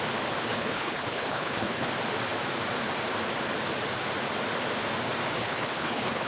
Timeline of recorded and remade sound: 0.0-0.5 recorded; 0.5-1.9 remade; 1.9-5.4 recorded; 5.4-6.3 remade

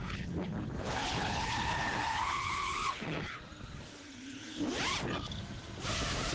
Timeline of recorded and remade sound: 0.0-3.4 remade; 3.4-3.9 recorded; 3.9-4.7 remade; 4.7-6.3 recorded

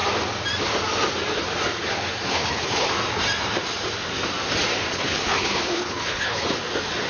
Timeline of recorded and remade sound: 0.0-2.3 recorded; 2.3-2.9 remade; 2.9-4.9 recorded; 4.9-6.6 remade; 6.6-7.1 recorded

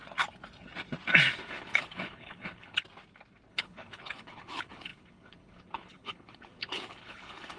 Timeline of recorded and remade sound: 0.0-1.5 recorded; 1.5-2.8 remade; 2.8-3.5 recorded; 3.5-7.6 remade

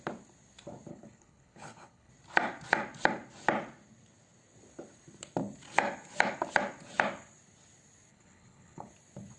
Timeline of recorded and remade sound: 0.0-0.9 recorded; 0.9-2.1 remade; 2.1-8.1 recorded; 8.1-8.9 remade; 8.9-9.4 recorded

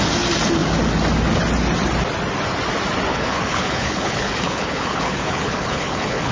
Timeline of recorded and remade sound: 0.0-3.1 recorded; 3.1-6.3 remade